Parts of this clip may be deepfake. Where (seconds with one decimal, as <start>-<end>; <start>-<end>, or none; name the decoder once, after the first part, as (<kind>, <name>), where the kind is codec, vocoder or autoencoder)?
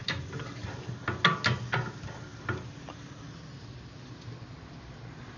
0.0-0.7 (vocoder, BigVGAN v2)